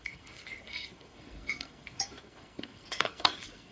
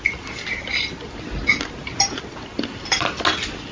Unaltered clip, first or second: second